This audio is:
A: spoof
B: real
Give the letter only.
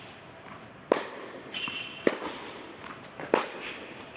A